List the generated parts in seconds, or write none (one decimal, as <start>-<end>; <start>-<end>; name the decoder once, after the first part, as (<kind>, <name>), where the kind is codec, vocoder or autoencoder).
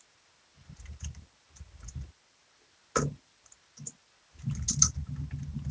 none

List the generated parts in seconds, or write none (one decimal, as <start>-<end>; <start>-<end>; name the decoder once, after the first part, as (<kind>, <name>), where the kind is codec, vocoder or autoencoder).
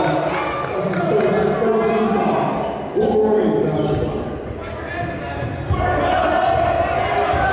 none